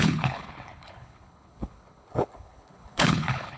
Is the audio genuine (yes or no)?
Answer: no